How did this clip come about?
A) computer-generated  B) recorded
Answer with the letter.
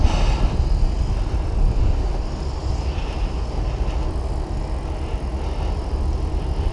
B